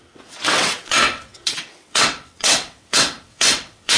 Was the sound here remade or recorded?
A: remade